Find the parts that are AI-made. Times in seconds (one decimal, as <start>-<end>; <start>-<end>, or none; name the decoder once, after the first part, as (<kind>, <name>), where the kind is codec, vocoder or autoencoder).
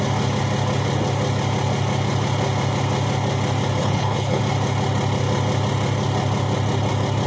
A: 3.8-4.4 (codec, HILCodec)